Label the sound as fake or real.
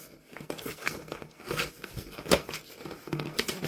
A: fake